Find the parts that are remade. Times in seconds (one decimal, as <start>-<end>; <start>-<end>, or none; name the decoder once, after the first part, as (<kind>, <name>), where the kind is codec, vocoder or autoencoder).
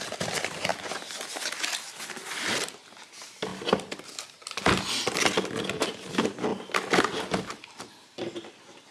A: none